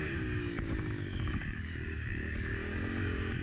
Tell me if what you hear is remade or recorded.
remade